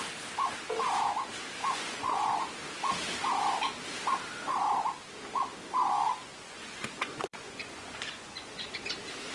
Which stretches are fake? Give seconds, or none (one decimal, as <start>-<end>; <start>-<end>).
1.6-2.4; 5.8-8.8